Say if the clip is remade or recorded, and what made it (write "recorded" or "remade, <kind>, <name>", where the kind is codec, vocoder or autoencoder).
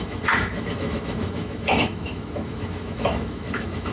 remade, autoencoder, DAC-VAE